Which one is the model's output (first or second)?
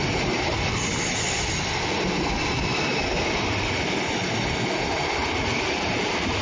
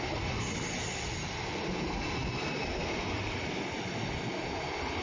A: first